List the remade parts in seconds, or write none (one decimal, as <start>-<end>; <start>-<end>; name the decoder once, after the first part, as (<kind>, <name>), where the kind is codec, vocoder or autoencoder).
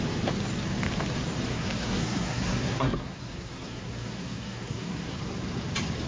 1.5-5.2 (codec, SNAC)